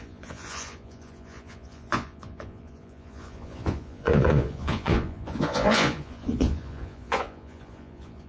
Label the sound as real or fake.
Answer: fake